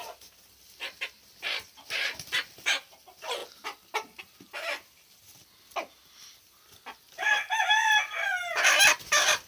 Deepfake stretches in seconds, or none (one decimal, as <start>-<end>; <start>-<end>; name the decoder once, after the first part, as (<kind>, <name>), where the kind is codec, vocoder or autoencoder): none